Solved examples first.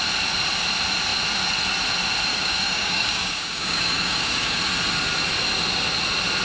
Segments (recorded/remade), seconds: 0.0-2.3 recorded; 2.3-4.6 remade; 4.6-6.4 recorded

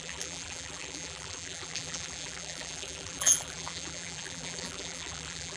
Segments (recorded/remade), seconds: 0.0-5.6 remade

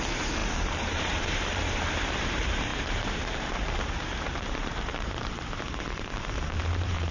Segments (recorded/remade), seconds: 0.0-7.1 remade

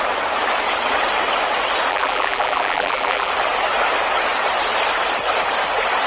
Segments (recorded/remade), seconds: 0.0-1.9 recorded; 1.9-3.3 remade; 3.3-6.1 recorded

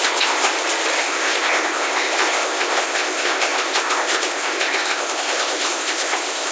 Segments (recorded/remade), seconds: 0.0-0.5 remade; 0.5-1.0 recorded; 1.0-6.5 remade

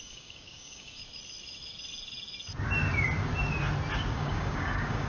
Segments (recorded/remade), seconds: 0.0-1.0 remade; 1.0-4.1 recorded; 4.1-5.1 remade

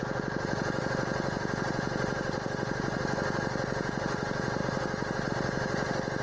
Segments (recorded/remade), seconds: 0.0-6.2 recorded

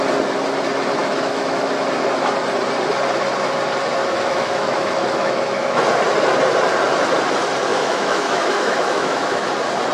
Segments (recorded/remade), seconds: 0.0-1.0 recorded; 1.0-1.7 remade; 1.7-4.0 recorded; 4.0-5.8 remade; 5.8-7.7 recorded; 7.7-9.5 remade; 9.5-9.9 recorded